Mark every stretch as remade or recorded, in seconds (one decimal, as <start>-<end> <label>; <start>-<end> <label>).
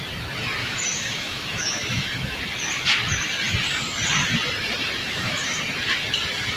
0.0-0.6 recorded; 0.6-2.4 remade; 2.4-5.0 recorded; 5.0-5.6 remade; 5.6-6.6 recorded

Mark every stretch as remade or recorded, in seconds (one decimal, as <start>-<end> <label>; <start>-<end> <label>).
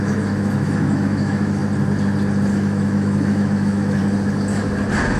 0.0-1.6 remade; 1.6-2.5 recorded; 2.5-4.0 remade; 4.0-5.2 recorded